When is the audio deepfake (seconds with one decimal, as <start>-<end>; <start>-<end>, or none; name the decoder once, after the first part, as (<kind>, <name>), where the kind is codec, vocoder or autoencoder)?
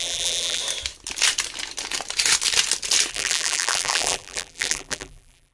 0.0-0.6 (vocoder, BigVGAN v2); 3.1-5.5